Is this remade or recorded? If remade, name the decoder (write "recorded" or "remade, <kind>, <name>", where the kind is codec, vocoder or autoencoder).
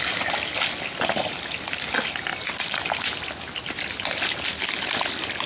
recorded